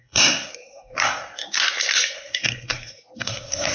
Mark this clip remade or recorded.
remade